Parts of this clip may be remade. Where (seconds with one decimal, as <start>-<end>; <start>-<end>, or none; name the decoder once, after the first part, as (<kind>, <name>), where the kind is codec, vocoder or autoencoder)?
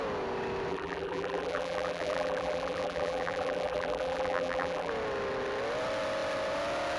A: 0.7-4.9 (vocoder, BigVGAN v2)